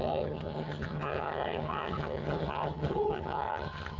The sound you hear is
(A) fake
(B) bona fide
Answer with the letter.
A